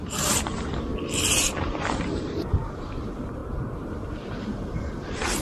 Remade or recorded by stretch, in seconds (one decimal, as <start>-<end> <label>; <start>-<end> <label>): 0.0-5.4 remade